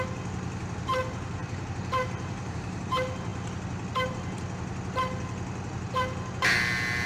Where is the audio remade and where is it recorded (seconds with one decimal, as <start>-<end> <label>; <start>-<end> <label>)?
0.0-1.4 recorded; 1.4-2.8 remade; 2.8-7.1 recorded